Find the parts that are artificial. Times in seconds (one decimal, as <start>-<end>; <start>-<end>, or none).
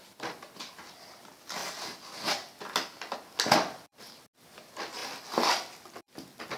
none